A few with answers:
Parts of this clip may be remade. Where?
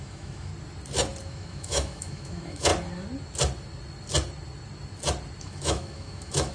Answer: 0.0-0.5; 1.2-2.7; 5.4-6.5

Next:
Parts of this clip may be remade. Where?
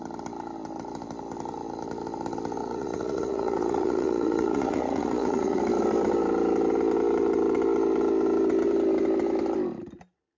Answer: 2.6-5.6